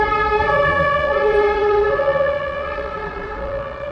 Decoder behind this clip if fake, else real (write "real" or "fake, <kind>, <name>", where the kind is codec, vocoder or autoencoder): fake, vocoder, Vocos